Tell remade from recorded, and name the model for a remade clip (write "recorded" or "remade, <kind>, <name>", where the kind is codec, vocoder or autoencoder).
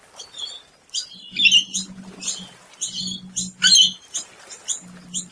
recorded